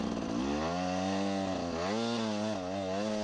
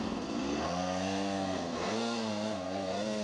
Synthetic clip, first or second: second